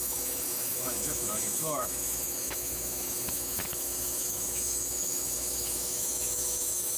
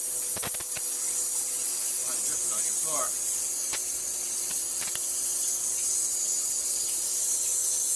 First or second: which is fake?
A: first